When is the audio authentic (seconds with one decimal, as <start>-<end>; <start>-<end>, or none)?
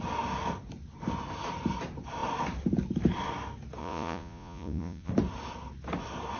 0.0-3.8; 5.1-6.4